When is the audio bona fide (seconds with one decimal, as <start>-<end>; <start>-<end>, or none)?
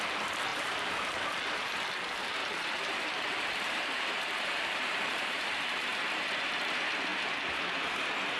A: 0.0-0.5; 1.3-2.4; 5.5-7.1; 7.6-8.4